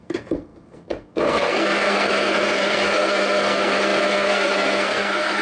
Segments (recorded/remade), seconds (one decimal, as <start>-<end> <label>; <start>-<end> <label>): 0.0-5.4 remade